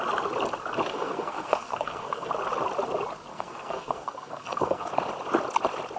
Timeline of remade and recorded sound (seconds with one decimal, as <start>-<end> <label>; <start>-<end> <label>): 0.0-0.9 recorded; 0.9-2.3 remade; 2.3-3.3 recorded; 3.3-4.9 remade; 4.9-6.0 recorded